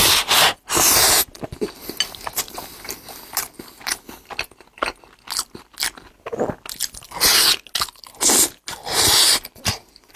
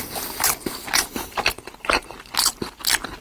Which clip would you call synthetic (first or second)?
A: second